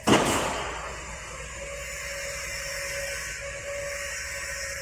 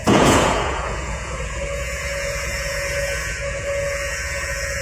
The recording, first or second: first